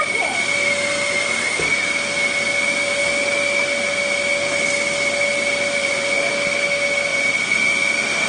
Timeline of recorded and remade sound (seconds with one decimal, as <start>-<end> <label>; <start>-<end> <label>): 0.0-5.8 recorded; 5.8-6.3 remade; 6.3-7.1 recorded; 7.1-7.9 remade; 7.9-8.3 recorded